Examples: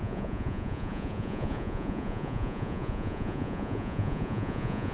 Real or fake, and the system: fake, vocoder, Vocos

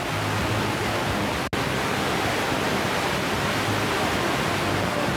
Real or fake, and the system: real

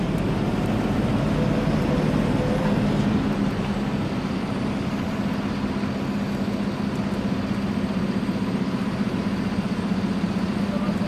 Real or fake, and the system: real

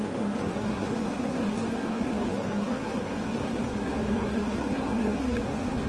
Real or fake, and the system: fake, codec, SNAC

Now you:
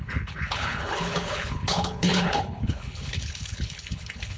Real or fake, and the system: fake, codec, HILCodec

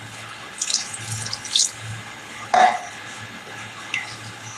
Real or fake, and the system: fake, codec, HILCodec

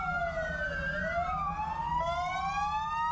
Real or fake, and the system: real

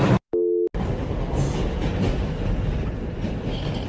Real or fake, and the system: real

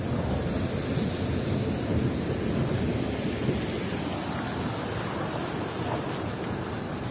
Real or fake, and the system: real